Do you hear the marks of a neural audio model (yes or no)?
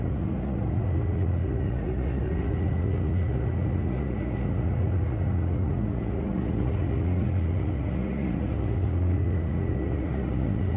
yes